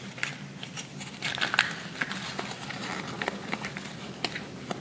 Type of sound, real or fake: real